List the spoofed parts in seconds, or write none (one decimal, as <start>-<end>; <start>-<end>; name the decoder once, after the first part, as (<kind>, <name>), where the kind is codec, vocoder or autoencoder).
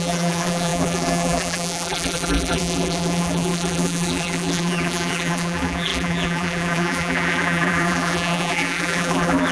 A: 0.0-9.5 (vocoder, BigVGAN v2)